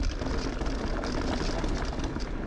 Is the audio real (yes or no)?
yes